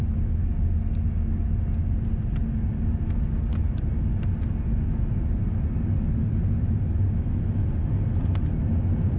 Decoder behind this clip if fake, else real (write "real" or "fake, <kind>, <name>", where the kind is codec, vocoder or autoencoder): real